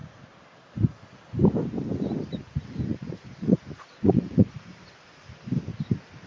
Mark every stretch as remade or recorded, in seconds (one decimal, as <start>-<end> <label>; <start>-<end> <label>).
0.0-2.9 recorded; 2.9-5.1 remade; 5.1-6.3 recorded